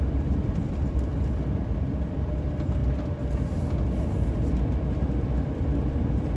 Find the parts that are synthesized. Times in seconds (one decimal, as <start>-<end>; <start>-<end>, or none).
0.0-1.1; 1.6-2.8; 3.8-6.4